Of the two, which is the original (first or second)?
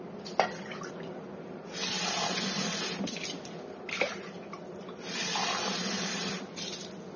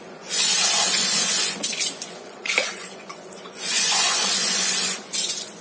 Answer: first